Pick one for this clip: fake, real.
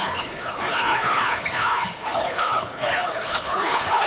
fake